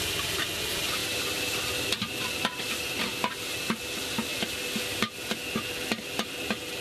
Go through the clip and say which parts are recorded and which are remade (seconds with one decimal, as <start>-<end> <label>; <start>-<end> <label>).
0.0-6.8 recorded